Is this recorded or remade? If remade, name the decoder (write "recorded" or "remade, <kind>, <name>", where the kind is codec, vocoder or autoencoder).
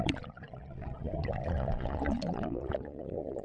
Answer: remade, vocoder, Vocos